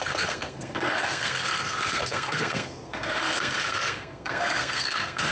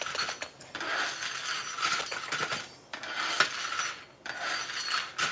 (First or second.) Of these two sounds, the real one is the second